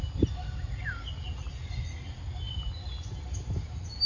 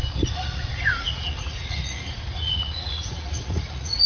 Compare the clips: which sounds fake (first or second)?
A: second